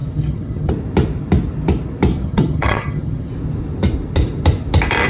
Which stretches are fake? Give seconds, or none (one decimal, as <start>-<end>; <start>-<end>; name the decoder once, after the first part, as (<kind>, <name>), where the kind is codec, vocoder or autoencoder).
0.0-0.7 (vocoder, HiFi-GAN); 2.1-3.3